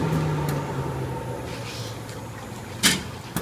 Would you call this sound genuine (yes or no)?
yes